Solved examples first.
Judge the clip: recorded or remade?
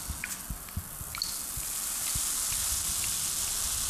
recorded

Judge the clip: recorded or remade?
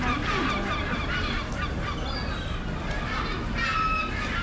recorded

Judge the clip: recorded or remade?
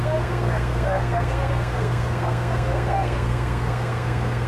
remade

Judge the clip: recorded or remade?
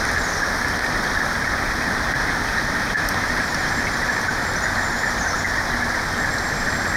recorded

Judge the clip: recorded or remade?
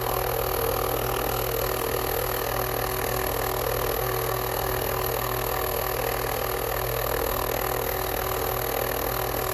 remade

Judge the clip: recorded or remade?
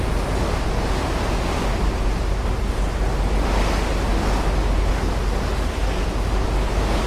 recorded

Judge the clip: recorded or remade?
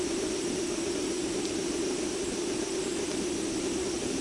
recorded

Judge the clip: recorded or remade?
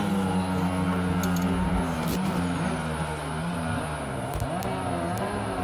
recorded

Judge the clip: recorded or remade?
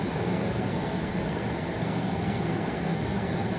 remade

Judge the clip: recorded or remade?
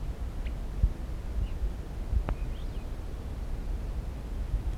recorded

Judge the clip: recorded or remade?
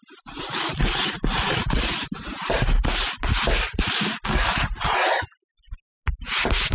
recorded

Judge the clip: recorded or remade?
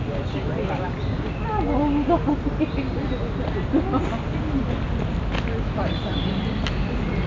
recorded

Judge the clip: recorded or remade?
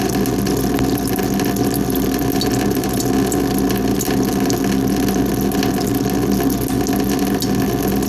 recorded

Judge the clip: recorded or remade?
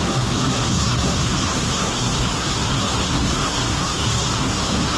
remade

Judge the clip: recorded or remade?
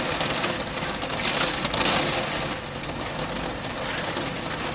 recorded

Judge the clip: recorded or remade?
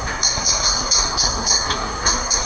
remade